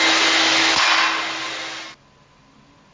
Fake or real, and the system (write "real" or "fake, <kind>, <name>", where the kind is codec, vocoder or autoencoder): real